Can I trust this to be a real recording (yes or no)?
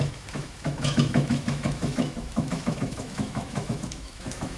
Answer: no